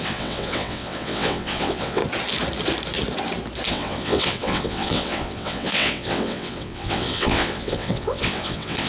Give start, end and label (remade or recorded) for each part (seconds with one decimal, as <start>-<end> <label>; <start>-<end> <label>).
0.0-2.0 remade; 2.0-3.7 recorded; 3.7-8.9 remade